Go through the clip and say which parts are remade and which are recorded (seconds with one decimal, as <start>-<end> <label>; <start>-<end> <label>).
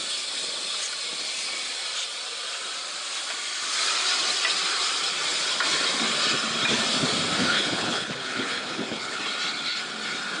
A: 0.0-7.4 recorded; 7.4-9.2 remade; 9.2-10.4 recorded